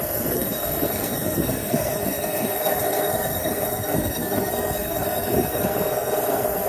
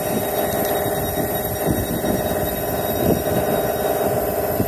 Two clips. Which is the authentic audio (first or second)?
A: second